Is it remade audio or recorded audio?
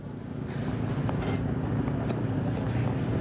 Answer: recorded